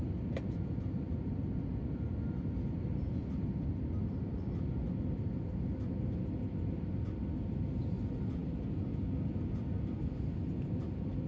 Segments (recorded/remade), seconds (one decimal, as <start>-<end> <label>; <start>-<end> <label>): 0.0-11.3 recorded